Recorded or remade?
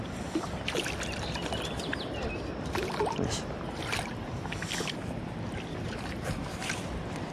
recorded